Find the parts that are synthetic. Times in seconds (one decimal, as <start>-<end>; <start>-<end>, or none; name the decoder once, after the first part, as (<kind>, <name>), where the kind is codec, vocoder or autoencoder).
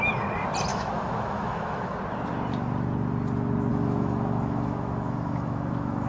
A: 0.7-2.0 (autoencoder, DAC-VAE); 3.7-6.1